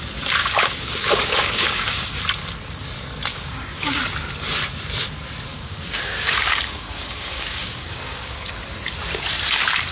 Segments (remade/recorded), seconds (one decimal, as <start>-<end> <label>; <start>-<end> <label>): 0.0-0.4 recorded; 0.4-2.2 remade; 2.2-3.3 recorded; 3.3-4.0 remade; 4.0-5.5 recorded; 5.5-8.5 remade; 8.5-9.9 recorded